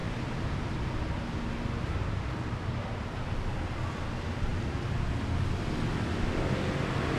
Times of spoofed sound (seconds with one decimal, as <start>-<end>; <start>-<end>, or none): none